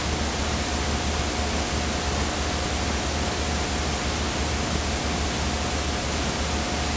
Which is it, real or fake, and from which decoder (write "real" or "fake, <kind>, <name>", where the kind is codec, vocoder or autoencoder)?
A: real